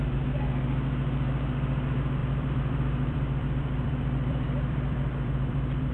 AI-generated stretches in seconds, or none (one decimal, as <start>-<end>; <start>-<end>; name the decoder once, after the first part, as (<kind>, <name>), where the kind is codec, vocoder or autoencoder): 2.2-5.9 (vocoder, BigVGAN v2)